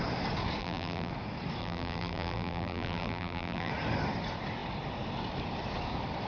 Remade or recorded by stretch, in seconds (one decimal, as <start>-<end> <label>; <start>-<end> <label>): 0.0-0.6 recorded; 0.6-1.1 remade; 1.1-1.6 recorded; 1.6-3.7 remade; 3.7-6.3 recorded